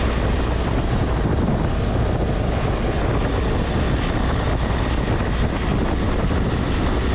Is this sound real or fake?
real